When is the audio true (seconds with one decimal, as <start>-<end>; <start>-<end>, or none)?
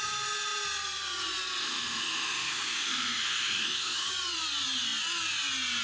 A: 0.0-1.6; 4.1-5.8